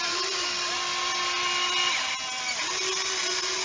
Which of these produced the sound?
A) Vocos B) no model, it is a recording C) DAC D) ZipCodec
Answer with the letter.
B